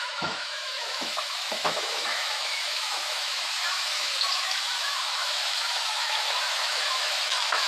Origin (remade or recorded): remade